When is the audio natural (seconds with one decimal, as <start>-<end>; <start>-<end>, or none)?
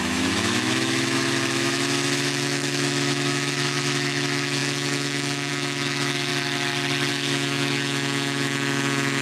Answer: 6.3-7.1